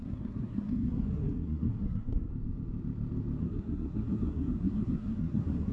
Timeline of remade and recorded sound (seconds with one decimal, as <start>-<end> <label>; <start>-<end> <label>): 0.0-2.3 remade; 2.3-3.4 recorded; 3.4-5.7 remade